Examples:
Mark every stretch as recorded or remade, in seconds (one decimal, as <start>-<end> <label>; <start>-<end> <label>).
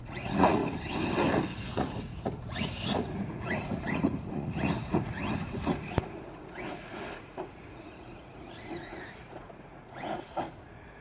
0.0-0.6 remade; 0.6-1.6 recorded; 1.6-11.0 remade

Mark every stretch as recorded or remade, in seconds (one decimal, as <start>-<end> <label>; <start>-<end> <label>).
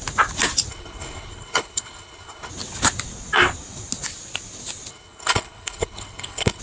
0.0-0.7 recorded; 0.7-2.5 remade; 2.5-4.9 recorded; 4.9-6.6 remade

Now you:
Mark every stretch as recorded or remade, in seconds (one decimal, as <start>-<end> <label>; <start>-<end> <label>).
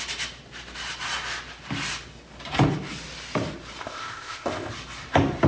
0.0-3.8 recorded; 3.8-4.7 remade; 4.7-5.5 recorded